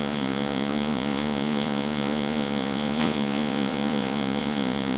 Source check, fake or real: fake